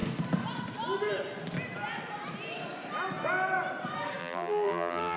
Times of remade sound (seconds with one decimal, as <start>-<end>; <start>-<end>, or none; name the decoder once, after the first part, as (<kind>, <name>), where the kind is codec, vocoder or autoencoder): 4.2-5.2 (vocoder, BigVGAN v2)